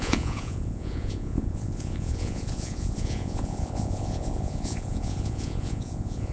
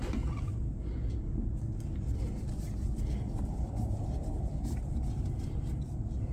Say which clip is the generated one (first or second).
first